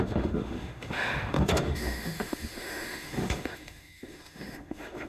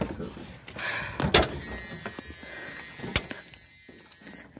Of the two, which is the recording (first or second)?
second